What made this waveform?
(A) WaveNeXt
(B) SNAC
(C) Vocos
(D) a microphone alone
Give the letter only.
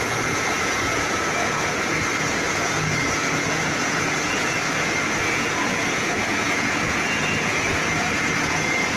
C